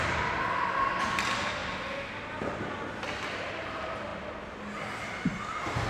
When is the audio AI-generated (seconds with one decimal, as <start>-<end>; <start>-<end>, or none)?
none